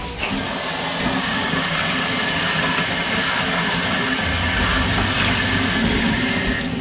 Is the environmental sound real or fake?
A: real